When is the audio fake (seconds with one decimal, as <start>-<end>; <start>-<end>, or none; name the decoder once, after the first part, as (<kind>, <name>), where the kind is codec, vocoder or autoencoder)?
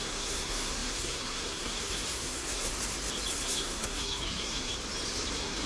0.0-2.7 (codec, SNAC); 3.3-4.7; 5.3-5.7